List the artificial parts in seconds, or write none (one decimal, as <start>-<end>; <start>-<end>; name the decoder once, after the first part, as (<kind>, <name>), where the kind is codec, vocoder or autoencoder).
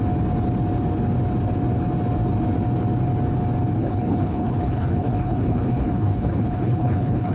3.8-7.3 (codec, HILCodec)